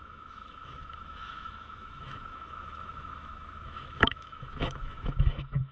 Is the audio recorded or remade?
remade